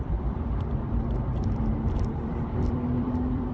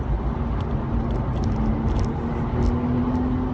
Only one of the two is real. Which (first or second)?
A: second